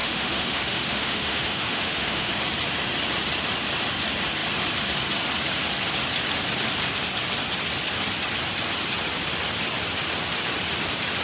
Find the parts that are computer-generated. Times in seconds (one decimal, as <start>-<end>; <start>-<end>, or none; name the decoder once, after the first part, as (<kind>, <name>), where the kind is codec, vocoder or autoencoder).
0.0-2.3 (autoencoder, DAC-VAE)